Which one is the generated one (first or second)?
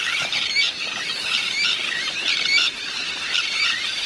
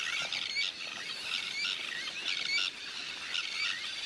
first